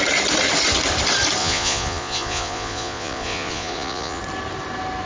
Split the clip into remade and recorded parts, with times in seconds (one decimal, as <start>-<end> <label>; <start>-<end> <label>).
0.0-1.4 recorded; 1.4-4.2 remade; 4.2-5.1 recorded